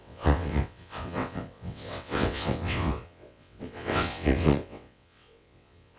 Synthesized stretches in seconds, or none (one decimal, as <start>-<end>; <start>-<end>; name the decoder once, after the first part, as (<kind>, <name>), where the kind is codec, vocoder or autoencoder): 0.0-6.0 (vocoder, WaveNeXt)